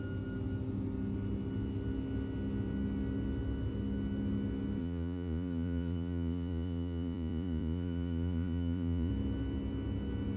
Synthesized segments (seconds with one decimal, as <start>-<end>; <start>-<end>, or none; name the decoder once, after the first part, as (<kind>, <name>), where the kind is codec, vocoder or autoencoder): 4.8-9.1 (vocoder, Vocos)